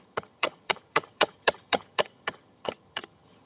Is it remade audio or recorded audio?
remade